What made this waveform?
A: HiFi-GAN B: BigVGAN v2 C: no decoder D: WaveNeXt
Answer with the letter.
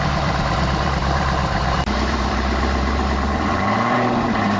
B